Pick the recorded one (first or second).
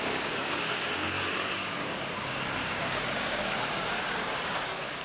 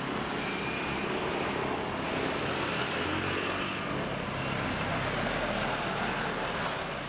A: second